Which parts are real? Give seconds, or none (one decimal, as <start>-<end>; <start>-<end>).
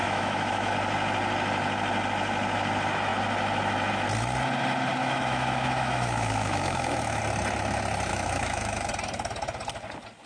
0.7-5.0; 7.2-8.1; 8.9-10.3